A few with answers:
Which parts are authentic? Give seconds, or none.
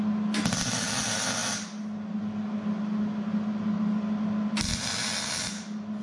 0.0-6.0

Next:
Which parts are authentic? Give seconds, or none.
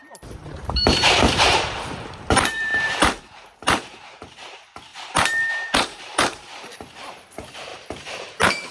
4.9-5.5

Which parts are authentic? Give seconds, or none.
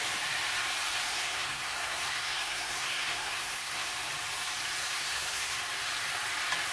0.0-1.1; 3.9-4.8; 5.6-6.7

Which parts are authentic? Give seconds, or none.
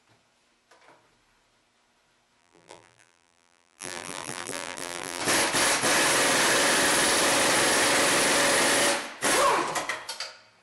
0.0-2.4; 5.2-10.6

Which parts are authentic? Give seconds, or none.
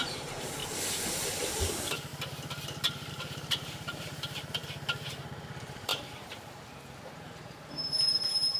0.6-1.5; 2.1-3.1; 4.6-5.1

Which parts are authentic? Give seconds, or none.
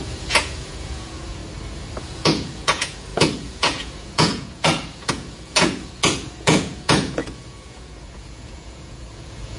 1.4-2.0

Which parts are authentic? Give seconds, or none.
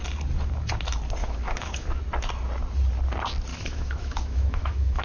0.0-1.2; 2.0-3.5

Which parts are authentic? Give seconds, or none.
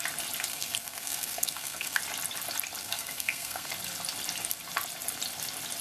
0.0-0.5; 2.0-2.8; 3.7-5.8